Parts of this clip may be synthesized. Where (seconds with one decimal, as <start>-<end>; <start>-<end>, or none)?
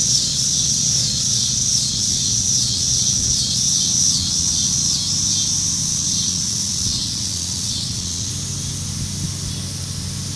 0.0-5.0; 5.8-8.3